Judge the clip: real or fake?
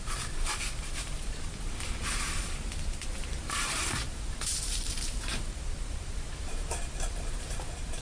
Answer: fake